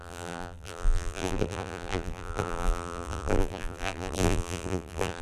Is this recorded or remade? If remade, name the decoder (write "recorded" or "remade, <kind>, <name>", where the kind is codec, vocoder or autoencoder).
remade, vocoder, BigVGAN v2